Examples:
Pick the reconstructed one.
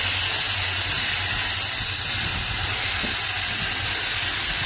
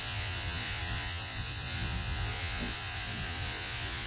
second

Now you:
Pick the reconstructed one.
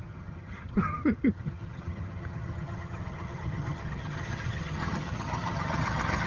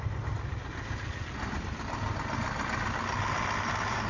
first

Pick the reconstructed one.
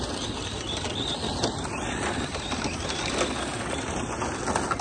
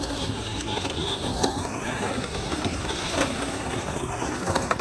second